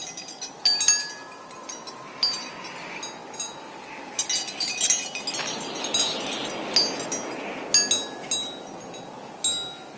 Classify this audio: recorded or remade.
recorded